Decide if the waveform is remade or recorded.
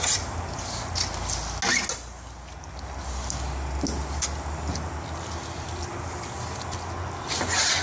recorded